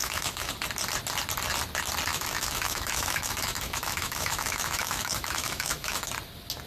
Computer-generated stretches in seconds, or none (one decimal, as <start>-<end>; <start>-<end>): 0.0-0.5; 2.1-6.1